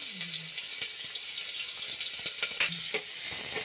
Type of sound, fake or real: real